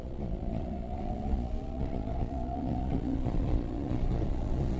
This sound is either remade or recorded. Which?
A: remade